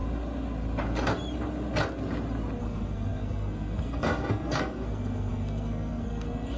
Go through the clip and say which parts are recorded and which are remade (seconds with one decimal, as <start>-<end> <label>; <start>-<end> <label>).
0.0-2.6 recorded; 2.6-6.6 remade